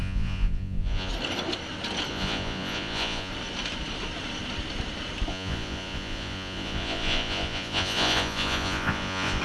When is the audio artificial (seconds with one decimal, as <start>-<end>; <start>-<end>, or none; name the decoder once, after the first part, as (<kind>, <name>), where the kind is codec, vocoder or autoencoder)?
0.0-1.1 (vocoder, Vocos); 2.1-3.3; 5.3-9.4